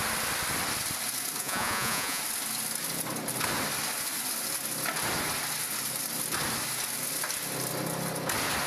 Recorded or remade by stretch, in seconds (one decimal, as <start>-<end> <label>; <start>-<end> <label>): 0.0-1.4 recorded; 1.4-2.2 remade; 2.2-8.7 recorded